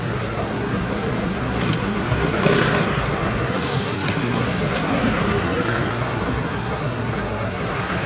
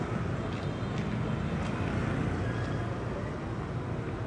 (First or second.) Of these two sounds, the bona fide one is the second